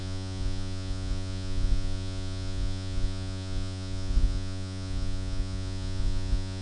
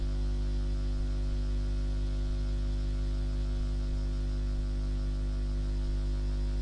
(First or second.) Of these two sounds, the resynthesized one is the first